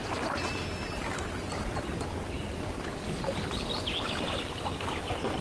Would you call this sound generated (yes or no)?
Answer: no